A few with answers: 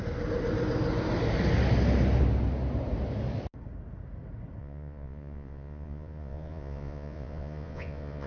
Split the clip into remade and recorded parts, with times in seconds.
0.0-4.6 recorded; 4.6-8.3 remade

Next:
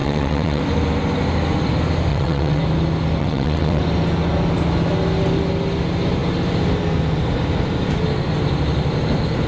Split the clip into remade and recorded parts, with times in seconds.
0.0-0.6 remade; 0.6-2.1 recorded; 2.1-2.6 remade; 2.6-3.2 recorded; 3.2-3.8 remade; 3.8-9.5 recorded

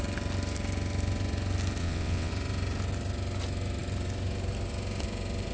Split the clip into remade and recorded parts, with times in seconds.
0.0-1.8 recorded; 1.8-2.3 remade; 2.3-5.5 recorded

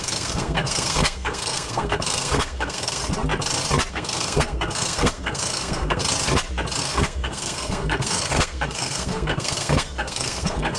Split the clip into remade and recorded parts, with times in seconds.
0.0-3.0 remade; 3.0-3.9 recorded; 3.9-6.0 remade; 6.0-6.8 recorded; 6.8-10.8 remade

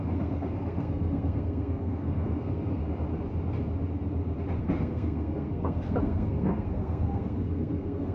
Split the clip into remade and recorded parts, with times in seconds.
0.0-2.8 remade; 2.8-4.6 recorded; 4.6-8.1 remade

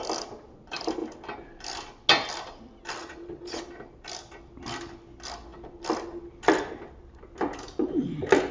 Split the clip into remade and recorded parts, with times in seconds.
0.0-3.0 recorded; 3.0-3.6 remade; 3.6-8.5 recorded